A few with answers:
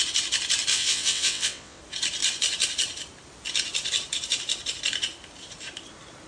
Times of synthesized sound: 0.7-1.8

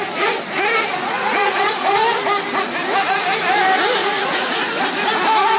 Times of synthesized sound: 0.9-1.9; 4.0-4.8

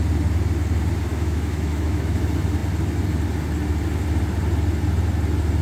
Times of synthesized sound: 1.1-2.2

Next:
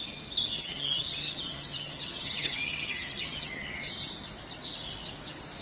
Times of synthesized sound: 0.5-3.9